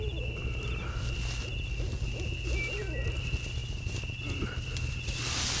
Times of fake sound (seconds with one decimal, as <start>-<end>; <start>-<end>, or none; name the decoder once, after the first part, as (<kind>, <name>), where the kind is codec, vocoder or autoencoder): 3.6-4.2 (vocoder, BigVGAN v2)